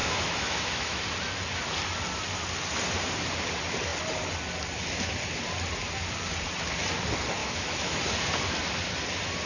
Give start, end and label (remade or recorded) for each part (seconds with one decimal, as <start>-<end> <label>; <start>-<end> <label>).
0.0-1.0 remade; 1.0-7.4 recorded; 7.4-8.0 remade; 8.0-9.5 recorded